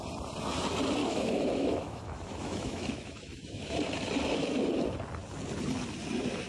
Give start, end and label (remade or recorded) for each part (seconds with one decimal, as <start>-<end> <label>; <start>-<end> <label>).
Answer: 0.0-1.0 recorded; 1.0-3.7 remade; 3.7-6.5 recorded